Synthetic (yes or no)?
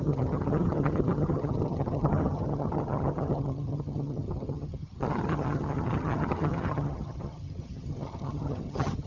yes